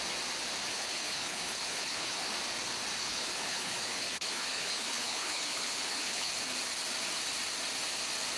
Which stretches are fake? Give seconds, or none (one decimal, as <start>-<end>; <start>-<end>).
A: 0.7-2.3; 3.0-6.3